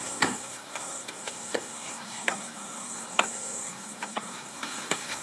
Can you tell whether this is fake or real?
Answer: fake